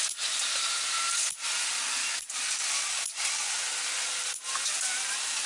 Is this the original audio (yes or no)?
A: yes